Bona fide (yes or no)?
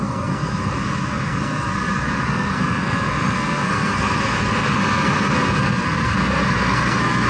no